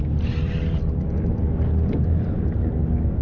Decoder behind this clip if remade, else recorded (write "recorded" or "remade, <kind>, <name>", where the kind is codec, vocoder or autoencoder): recorded